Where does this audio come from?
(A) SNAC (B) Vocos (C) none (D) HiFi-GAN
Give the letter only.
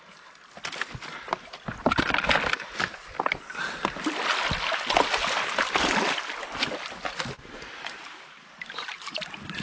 C